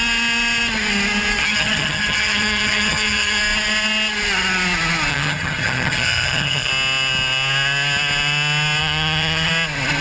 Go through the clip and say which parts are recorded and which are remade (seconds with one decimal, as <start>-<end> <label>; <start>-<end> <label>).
0.0-1.4 recorded; 1.4-3.4 remade; 3.4-5.1 recorded; 5.1-6.7 remade; 6.7-8.8 recorded; 8.8-9.5 remade; 9.5-10.0 recorded